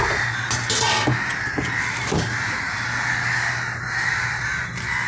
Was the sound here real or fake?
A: real